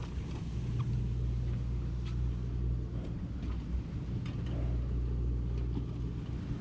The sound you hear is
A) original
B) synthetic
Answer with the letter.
A